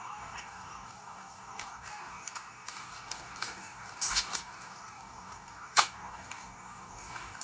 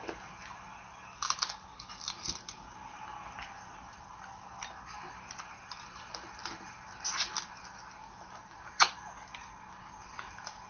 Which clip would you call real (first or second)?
second